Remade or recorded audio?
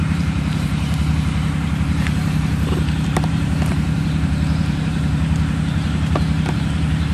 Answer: remade